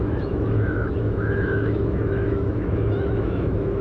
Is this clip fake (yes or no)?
yes